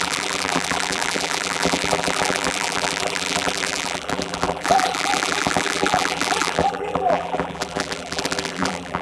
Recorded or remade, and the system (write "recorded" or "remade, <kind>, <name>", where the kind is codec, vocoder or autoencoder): remade, vocoder, BigVGAN v2